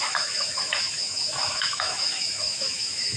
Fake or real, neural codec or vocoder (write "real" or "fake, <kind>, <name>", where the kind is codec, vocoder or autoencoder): fake, autoencoder, DAC-VAE